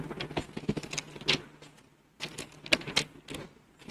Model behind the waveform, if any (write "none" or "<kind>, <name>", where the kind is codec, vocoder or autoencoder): none